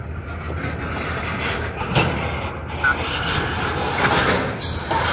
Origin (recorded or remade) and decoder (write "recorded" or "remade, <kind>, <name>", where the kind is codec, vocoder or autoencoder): recorded